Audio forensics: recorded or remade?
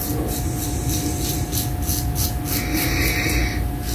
recorded